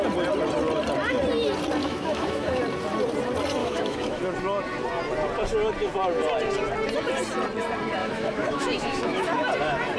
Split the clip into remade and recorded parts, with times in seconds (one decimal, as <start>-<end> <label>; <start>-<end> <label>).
0.0-1.8 recorded; 1.8-2.6 remade; 2.6-3.6 recorded; 3.6-4.2 remade; 4.2-8.0 recorded; 8.0-9.5 remade; 9.5-10.0 recorded